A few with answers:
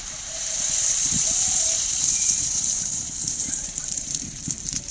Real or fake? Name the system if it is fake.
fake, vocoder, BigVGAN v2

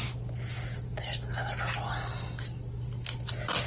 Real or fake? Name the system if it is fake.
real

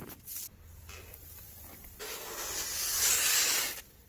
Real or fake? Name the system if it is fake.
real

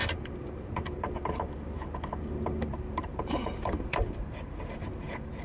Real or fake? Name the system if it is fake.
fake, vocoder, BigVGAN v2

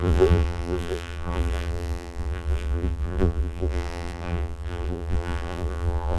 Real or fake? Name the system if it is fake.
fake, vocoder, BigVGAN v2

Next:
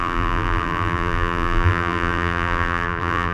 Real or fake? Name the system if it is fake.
fake, vocoder, BigVGAN v2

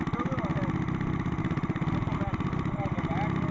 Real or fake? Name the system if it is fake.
real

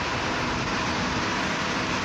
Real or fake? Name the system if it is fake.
fake, vocoder, BigVGAN v2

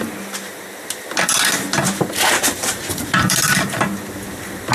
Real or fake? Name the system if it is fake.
fake, vocoder, BigVGAN v2